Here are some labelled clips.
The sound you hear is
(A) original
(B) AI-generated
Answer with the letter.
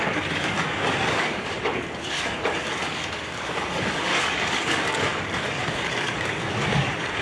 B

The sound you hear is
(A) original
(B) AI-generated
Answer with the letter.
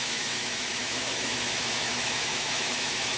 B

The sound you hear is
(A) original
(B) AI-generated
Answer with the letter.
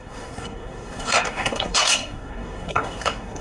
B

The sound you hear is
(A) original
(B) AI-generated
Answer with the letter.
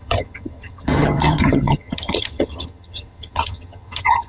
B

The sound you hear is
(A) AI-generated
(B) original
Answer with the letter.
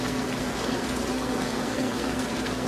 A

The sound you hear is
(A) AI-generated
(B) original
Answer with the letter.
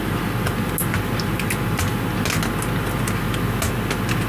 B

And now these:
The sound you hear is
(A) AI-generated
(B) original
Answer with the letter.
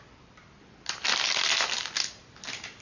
B